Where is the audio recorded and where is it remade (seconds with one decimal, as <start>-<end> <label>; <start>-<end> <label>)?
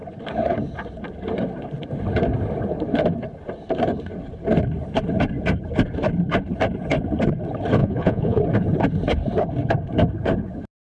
0.0-7.8 recorded; 7.8-8.4 remade; 8.4-10.9 recorded